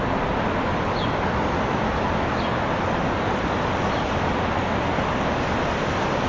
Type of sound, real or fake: real